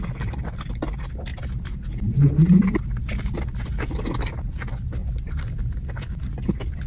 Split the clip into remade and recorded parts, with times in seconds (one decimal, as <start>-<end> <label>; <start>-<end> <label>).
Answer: 0.0-1.3 recorded; 1.3-3.6 remade; 3.6-5.0 recorded; 5.0-5.7 remade; 5.7-6.9 recorded